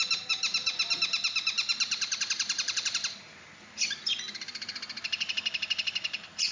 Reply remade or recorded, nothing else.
recorded